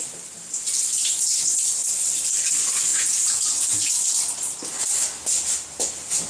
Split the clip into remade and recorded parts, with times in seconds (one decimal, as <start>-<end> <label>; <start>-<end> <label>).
0.0-2.9 recorded; 2.9-3.9 remade; 3.9-6.3 recorded